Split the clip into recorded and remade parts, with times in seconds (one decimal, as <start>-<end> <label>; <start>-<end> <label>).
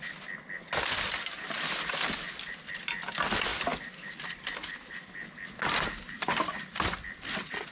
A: 0.0-7.7 recorded